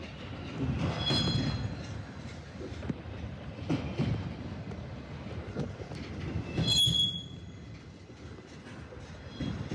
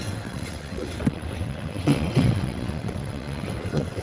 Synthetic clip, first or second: second